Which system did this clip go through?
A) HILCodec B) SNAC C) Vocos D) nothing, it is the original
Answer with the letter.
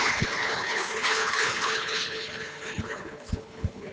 A